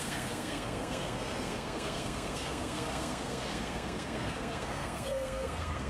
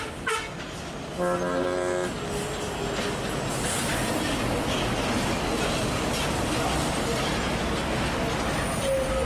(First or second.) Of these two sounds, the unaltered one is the second